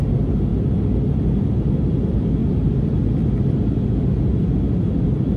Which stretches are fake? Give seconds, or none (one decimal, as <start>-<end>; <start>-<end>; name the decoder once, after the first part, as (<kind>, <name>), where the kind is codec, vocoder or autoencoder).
none